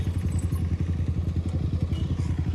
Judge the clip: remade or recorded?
recorded